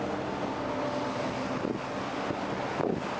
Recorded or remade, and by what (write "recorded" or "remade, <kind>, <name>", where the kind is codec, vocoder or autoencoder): recorded